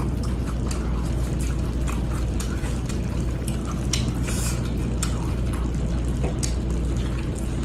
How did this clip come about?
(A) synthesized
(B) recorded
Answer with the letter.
B